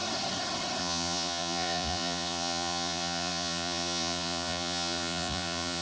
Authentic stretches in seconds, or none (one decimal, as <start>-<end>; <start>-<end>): 0.0-0.8

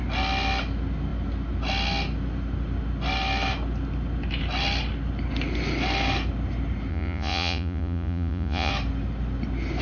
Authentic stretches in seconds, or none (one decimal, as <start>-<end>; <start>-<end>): 0.0-6.9; 8.7-9.8